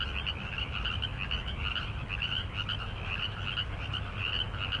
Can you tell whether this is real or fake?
real